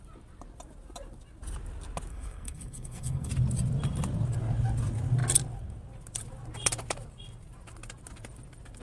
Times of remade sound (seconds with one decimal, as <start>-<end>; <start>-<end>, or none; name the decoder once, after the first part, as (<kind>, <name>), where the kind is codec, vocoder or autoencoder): 2.1-3.3 (codec, SNAC)